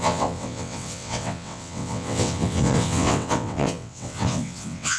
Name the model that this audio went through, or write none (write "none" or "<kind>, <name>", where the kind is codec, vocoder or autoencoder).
vocoder, WaveNeXt